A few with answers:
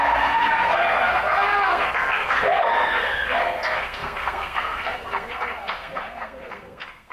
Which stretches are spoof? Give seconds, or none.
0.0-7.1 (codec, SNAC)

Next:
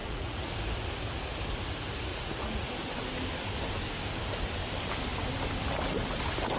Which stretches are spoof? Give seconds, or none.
0.0-0.5 (vocoder, Vocos); 2.1-2.7

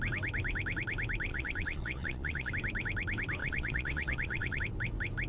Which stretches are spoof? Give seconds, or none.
1.3-2.5 (vocoder, Vocos); 3.4-4.6

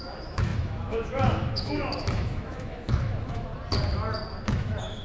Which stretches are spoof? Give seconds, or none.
0.0-3.5 (autoencoder, DAC-VAE); 4.4-5.0

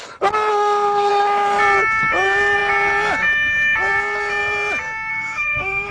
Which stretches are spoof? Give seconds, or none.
0.5-1.1 (autoencoder, DAC-VAE); 5.1-5.9

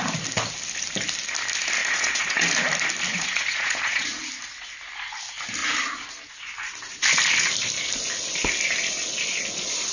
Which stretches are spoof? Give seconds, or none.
1.8-2.5 (vocoder, Vocos); 3.1-4.2

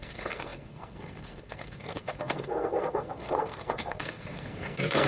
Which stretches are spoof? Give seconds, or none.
0.0-5.1 (codec, SNAC)